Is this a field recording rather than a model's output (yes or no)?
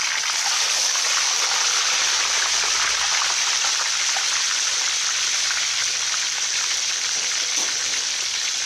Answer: yes